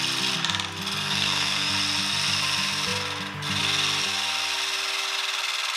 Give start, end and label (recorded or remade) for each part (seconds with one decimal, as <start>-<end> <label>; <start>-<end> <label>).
0.0-1.0 recorded; 1.0-1.7 remade; 1.7-5.8 recorded